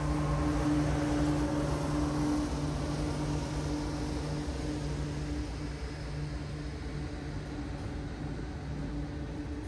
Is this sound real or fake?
real